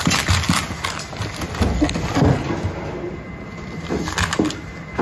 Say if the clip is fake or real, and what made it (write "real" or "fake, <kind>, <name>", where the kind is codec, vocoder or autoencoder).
real